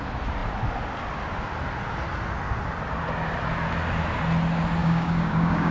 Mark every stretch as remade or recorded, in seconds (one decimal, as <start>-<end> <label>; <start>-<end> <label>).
0.0-4.8 recorded; 4.8-5.7 remade